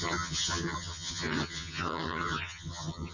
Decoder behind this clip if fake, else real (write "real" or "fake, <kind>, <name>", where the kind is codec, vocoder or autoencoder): fake, vocoder, HiFi-GAN